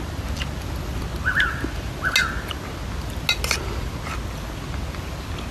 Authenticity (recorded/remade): recorded